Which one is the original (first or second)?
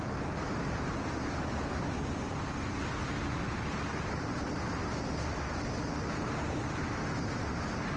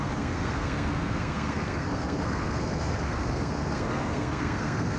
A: first